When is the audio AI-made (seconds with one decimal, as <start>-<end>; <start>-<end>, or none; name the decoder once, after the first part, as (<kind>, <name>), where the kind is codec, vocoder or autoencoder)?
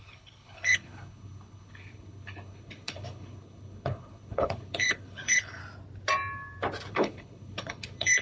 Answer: 0.0-5.6 (codec, HILCodec); 6.9-8.2